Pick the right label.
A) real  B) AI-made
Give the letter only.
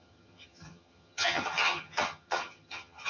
B